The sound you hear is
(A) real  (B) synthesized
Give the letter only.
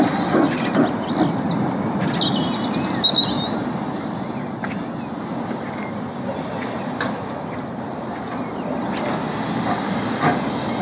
A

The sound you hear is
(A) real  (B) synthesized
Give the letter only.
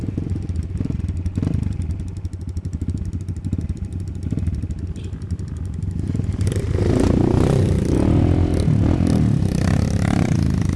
A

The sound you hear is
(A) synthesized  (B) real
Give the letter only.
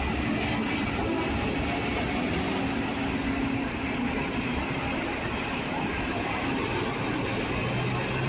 B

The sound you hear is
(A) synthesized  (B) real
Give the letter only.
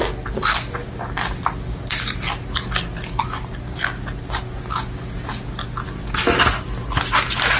B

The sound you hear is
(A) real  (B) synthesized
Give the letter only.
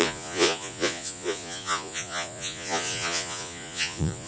B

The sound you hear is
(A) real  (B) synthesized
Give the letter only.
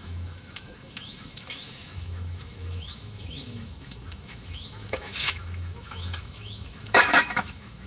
B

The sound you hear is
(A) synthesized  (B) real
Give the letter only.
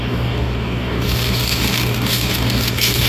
A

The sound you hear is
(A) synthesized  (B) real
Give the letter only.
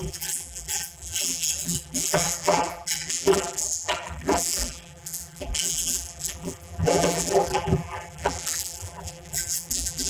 A